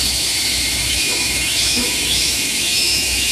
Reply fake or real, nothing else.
fake